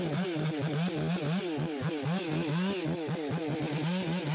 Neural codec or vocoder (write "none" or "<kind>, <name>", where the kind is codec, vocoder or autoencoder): none